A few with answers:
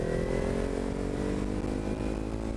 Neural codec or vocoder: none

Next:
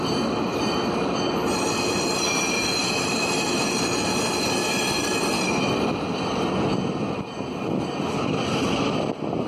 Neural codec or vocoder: none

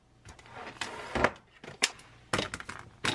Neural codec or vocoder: none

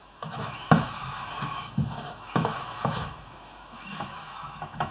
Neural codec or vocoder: autoencoder, DAC-VAE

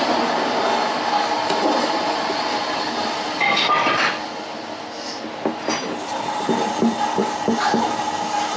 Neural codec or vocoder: none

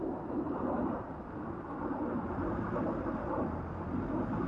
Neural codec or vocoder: vocoder, BigVGAN v2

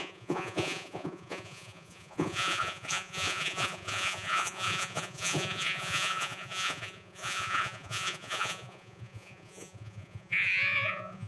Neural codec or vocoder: vocoder, Vocos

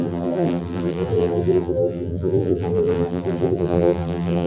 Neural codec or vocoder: vocoder, BigVGAN v2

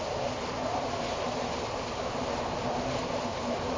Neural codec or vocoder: none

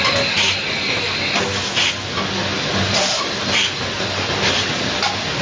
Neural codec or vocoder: none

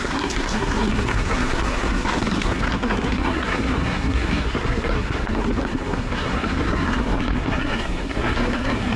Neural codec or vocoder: codec, SNAC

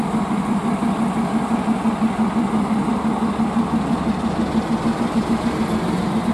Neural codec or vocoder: vocoder, BigVGAN v2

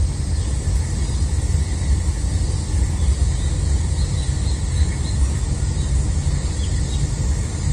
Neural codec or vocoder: none